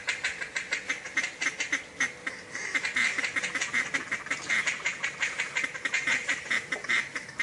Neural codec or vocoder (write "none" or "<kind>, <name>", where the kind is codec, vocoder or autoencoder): none